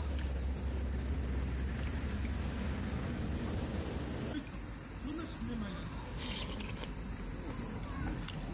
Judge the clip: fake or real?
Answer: real